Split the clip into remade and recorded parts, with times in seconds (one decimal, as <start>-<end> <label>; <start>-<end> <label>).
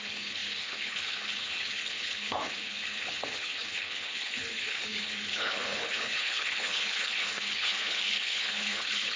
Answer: 0.0-9.2 remade